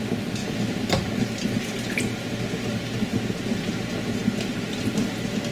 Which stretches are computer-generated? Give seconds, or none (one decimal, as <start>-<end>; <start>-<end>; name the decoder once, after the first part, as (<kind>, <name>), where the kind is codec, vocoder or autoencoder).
none